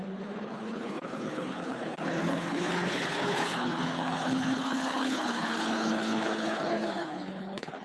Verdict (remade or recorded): remade